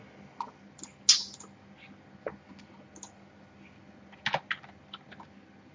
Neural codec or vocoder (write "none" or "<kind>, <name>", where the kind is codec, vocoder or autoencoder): none